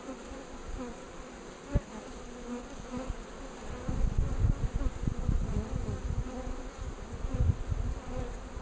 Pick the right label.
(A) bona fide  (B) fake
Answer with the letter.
A